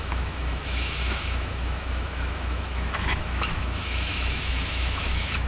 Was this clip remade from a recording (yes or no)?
yes